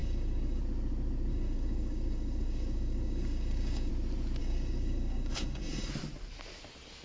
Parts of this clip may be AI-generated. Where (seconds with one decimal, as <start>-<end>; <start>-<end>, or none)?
0.0-0.6; 1.3-3.9; 4.4-5.9